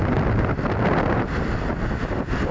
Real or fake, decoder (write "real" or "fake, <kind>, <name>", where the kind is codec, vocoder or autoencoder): real